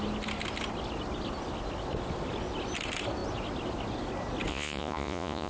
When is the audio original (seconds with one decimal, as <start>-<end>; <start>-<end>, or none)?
0.0-4.5